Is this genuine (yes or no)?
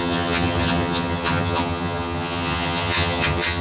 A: no